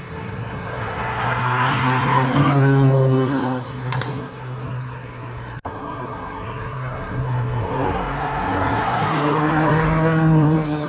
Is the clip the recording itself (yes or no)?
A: no